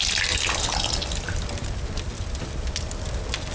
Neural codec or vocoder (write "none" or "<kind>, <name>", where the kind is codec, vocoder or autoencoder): none